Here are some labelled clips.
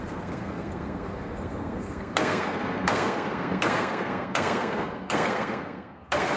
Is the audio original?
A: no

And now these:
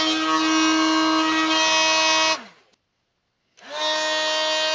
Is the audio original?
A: yes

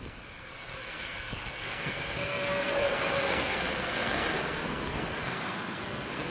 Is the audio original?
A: no